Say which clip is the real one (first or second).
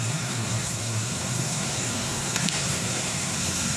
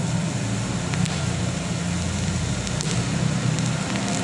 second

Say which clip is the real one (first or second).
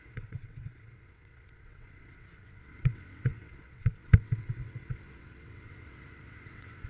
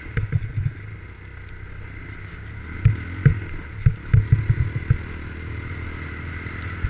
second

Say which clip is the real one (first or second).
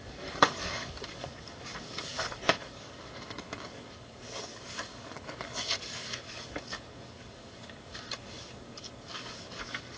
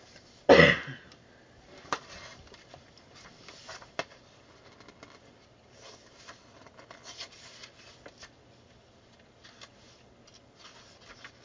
second